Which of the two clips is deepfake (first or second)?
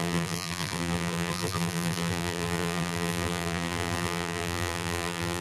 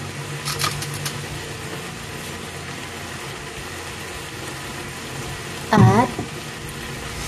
first